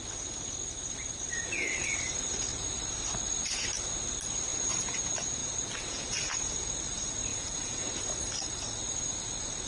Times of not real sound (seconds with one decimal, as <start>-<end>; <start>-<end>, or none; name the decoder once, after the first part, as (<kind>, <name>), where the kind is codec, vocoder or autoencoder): 4.5-5.0 (vocoder, Vocos); 5.4-6.8; 7.3-7.9